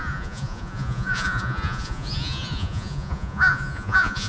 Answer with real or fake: fake